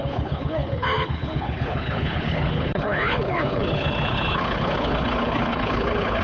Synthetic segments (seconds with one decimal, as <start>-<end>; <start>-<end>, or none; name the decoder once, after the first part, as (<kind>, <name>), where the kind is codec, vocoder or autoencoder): 0.0-6.2 (codec, HILCodec)